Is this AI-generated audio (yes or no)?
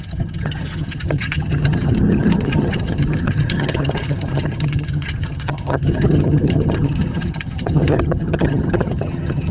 yes